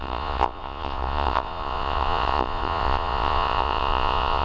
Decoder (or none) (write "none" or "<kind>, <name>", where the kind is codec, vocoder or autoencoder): vocoder, Vocos